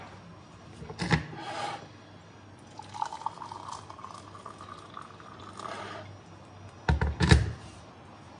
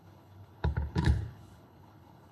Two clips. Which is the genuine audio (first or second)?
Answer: first